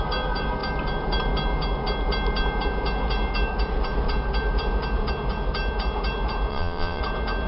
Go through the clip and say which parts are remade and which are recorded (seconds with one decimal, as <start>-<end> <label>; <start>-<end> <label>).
0.0-6.5 recorded; 6.5-7.0 remade; 7.0-7.5 recorded